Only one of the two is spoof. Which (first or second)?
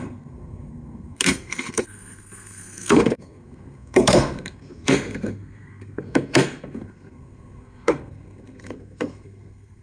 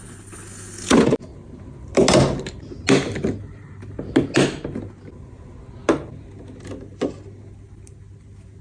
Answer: first